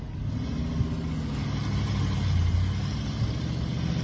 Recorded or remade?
recorded